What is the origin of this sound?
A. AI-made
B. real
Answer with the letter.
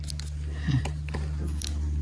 B